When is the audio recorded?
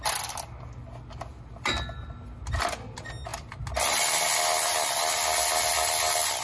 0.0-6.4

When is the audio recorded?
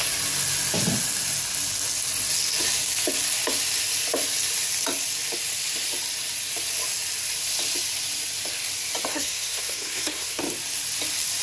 0.0-9.1; 10.4-11.4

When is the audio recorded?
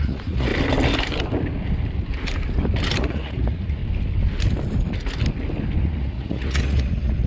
0.5-3.0; 3.8-5.8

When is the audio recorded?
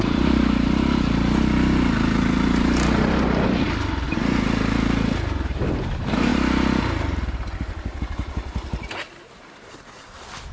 0.0-10.5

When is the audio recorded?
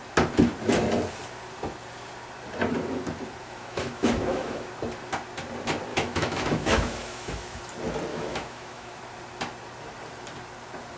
0.0-3.4; 4.7-5.9; 7.6-8.1; 9.0-11.0